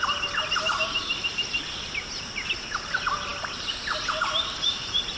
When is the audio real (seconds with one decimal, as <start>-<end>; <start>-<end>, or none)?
0.0-5.2